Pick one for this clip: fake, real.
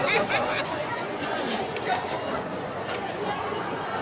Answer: fake